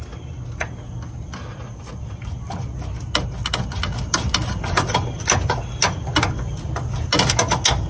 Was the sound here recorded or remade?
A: recorded